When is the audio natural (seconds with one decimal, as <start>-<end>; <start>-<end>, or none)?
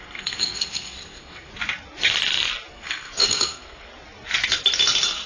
1.5-2.7; 3.9-5.3